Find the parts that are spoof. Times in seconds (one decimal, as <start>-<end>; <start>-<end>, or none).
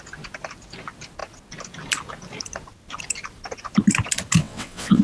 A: 4.4-5.0